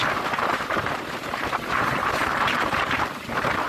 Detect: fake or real fake